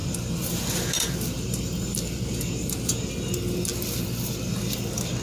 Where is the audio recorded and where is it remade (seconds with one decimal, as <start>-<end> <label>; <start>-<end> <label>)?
0.0-3.1 remade; 3.1-5.2 recorded